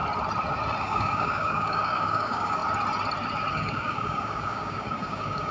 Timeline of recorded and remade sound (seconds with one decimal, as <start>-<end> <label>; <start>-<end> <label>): 0.0-0.8 recorded; 0.8-2.6 remade; 2.6-3.5 recorded; 3.5-5.5 remade

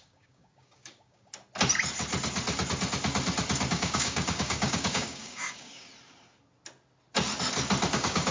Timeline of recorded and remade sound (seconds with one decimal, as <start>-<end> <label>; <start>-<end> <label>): 0.0-1.3 remade; 1.3-3.7 recorded; 3.7-5.9 remade; 5.9-7.9 recorded; 7.9-8.3 remade

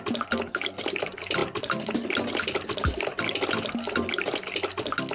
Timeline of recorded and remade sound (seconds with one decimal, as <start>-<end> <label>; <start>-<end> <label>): 0.0-5.1 recorded

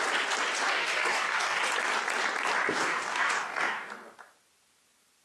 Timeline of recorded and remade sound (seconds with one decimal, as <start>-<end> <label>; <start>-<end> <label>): 0.0-0.7 recorded; 0.7-1.6 remade; 1.6-2.7 recorded; 2.7-3.9 remade; 3.9-5.2 recorded

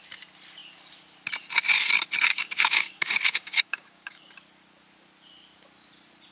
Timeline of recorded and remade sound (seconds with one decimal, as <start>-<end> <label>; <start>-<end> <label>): 0.0-2.3 recorded; 2.3-4.3 remade; 4.3-6.3 recorded

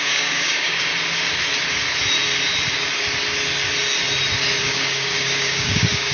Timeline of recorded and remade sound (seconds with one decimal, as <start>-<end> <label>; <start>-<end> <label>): 0.0-0.9 remade; 0.9-4.6 recorded; 4.6-6.1 remade